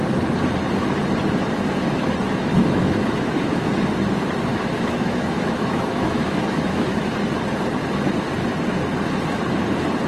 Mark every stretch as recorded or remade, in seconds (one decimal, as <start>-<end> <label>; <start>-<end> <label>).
0.0-2.4 recorded; 2.4-3.7 remade; 3.7-4.5 recorded; 4.5-7.1 remade; 7.1-10.1 recorded